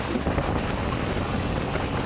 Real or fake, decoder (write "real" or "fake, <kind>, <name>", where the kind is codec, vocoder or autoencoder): real